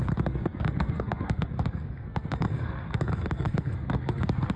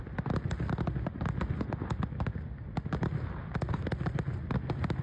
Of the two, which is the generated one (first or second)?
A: first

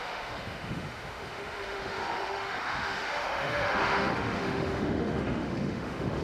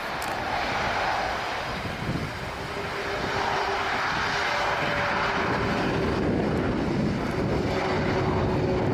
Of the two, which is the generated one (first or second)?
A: first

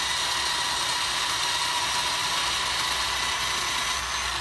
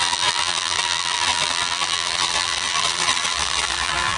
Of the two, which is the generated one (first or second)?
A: second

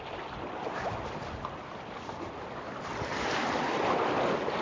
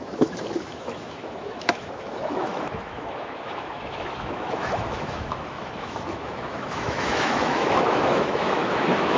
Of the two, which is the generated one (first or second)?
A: second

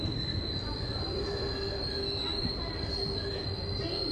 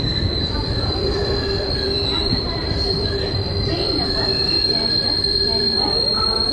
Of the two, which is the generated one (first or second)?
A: second